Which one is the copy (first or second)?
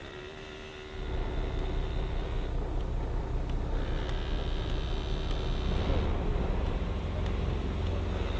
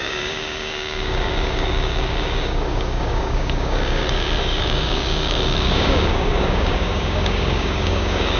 second